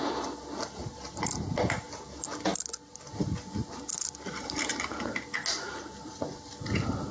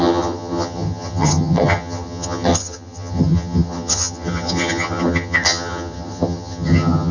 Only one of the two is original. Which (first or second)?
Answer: first